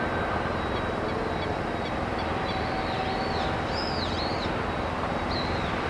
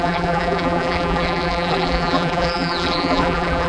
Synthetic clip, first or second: second